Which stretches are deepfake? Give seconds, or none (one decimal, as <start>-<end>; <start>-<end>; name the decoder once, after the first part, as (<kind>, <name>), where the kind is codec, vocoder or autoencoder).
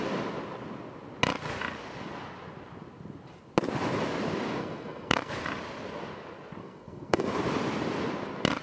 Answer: 4.6-5.3 (codec, SNAC); 6.6-7.3